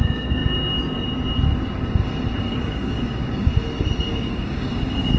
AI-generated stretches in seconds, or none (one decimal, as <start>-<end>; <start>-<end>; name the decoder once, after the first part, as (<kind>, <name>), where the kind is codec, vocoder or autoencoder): 0.0-0.4 (codec, DAC); 2.4-3.5; 4.0-5.2